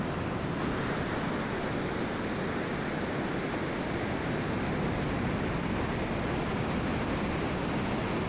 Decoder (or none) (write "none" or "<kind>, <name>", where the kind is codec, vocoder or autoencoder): none